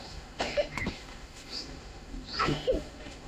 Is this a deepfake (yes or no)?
yes